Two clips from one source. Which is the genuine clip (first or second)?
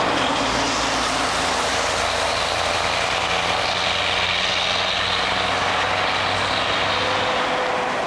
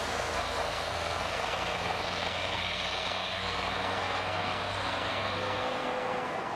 first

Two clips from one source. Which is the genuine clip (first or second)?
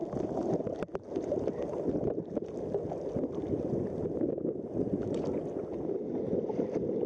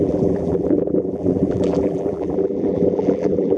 first